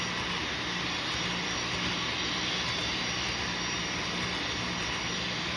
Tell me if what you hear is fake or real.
real